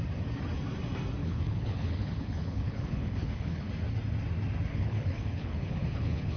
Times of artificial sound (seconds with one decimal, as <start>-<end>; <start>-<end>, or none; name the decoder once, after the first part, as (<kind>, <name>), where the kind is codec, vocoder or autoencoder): 1.2-3.7 (codec, HILCodec); 4.7-6.4